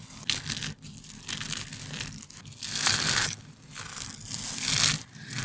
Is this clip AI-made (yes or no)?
no